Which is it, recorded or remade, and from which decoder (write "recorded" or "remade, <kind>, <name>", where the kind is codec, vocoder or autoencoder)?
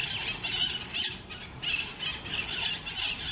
recorded